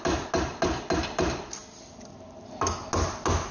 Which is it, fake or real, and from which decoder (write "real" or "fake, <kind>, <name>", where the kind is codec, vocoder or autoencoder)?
real